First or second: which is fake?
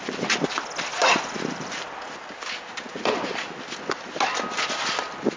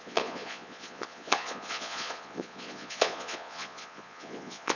second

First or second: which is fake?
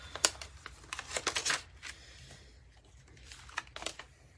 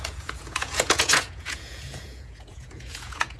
second